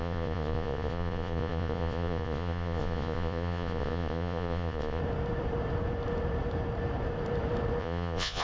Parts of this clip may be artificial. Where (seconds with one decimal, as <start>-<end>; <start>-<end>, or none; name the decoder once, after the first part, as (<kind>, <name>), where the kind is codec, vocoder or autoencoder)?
0.0-5.0 (vocoder, Vocos); 7.8-8.4